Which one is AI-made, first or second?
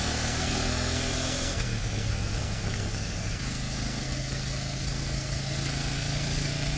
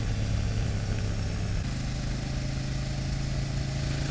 first